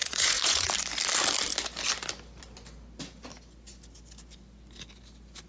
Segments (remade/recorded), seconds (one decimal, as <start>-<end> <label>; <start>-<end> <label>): 0.0-0.7 remade; 0.7-5.5 recorded